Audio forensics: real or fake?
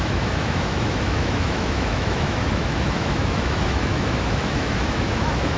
fake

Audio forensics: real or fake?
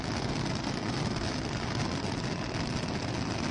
real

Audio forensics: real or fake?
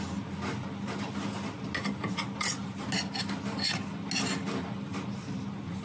real